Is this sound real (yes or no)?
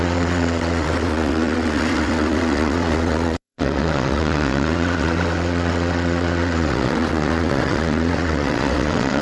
no